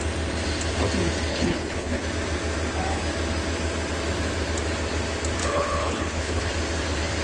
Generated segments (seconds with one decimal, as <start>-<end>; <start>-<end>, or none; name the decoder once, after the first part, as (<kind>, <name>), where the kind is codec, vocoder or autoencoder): 1.3-2.1 (codec, HILCodec); 5.4-6.5